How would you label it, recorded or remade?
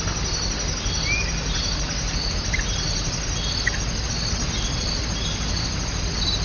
recorded